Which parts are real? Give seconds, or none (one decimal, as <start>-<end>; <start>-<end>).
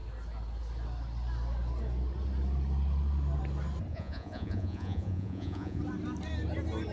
0.0-3.9; 5.8-6.9